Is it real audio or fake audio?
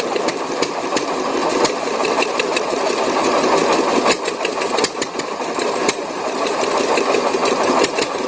real